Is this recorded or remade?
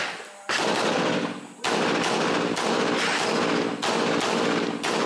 recorded